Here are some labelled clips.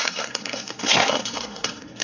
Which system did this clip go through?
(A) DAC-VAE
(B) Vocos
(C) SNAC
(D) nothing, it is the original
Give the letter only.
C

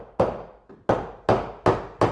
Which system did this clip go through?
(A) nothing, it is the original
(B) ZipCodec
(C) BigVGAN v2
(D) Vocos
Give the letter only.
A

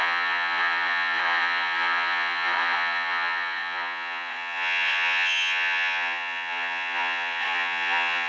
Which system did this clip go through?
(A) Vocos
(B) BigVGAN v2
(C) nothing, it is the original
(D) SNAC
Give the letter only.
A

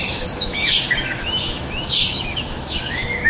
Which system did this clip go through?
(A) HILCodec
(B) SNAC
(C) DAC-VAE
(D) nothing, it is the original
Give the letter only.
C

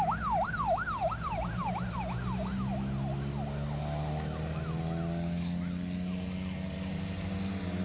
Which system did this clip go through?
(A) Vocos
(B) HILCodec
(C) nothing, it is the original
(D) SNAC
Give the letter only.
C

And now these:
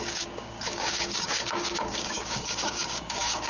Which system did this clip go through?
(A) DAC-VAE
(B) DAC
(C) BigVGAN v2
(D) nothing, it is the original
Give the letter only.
B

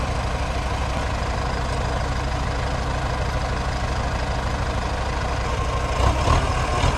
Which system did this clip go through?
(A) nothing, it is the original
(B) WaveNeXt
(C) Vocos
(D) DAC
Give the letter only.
A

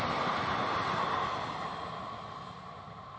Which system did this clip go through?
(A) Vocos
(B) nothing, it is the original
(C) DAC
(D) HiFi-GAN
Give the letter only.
B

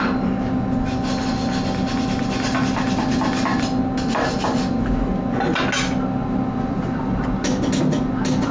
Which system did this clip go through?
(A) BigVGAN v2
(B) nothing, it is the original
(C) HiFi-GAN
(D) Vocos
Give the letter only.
B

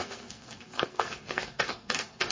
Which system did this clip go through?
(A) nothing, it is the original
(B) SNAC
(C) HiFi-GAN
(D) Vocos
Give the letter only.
B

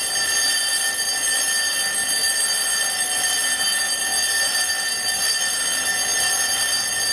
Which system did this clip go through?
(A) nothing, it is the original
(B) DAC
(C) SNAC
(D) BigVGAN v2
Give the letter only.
A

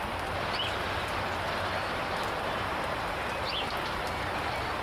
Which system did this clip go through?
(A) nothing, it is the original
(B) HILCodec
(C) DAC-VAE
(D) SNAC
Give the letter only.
A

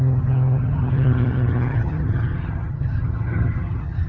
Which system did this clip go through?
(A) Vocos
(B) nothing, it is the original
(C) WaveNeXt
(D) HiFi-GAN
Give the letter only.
D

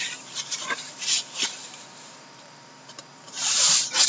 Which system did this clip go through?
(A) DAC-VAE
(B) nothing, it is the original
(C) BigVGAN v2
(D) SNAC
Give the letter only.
C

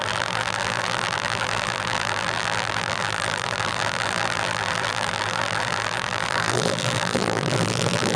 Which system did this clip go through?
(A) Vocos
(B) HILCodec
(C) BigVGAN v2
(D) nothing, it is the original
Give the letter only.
C